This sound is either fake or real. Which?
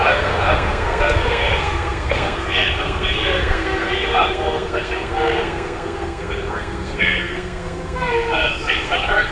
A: fake